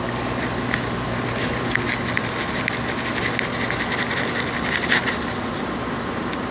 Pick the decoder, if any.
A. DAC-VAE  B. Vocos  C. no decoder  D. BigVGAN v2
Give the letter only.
C